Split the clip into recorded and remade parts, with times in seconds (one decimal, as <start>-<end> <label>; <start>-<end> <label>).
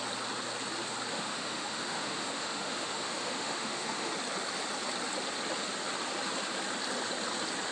0.0-1.1 recorded; 1.1-4.1 remade; 4.1-7.7 recorded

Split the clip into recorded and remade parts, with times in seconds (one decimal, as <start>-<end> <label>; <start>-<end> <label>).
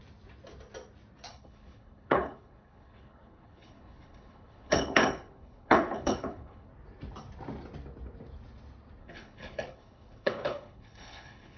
0.0-1.3 recorded; 1.3-6.7 remade; 6.7-9.0 recorded; 9.0-11.6 remade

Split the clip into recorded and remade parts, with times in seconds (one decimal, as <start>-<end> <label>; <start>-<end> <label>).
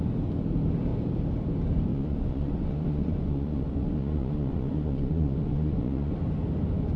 0.0-1.9 recorded; 1.9-6.1 remade; 6.1-7.0 recorded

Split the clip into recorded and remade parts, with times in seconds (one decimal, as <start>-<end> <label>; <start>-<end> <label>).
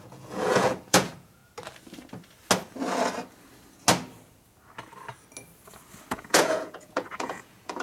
0.0-1.4 remade; 1.4-6.1 recorded; 6.1-7.8 remade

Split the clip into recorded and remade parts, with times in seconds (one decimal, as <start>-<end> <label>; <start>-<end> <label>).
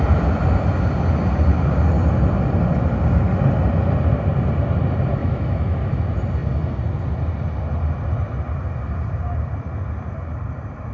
0.0-5.2 recorded; 5.2-6.0 remade; 6.0-10.9 recorded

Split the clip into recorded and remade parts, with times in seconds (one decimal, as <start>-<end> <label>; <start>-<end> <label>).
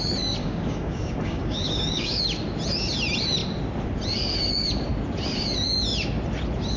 0.0-0.4 recorded; 0.4-2.2 remade; 2.2-6.8 recorded